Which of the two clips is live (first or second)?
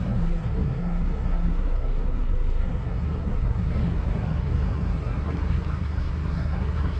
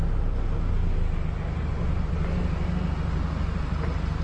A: second